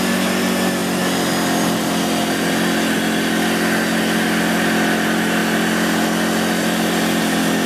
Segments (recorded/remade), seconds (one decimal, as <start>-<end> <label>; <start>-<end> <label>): 0.0-7.7 recorded

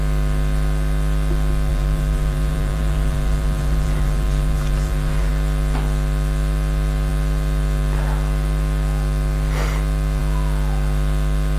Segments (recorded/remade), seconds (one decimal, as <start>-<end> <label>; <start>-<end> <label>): 0.0-1.7 recorded; 1.7-5.3 remade; 5.3-11.6 recorded